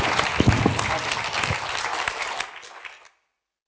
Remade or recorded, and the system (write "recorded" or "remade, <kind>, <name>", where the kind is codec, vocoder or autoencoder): recorded